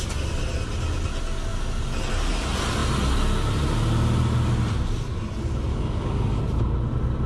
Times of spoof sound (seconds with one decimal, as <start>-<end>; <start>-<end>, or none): 5.7-6.4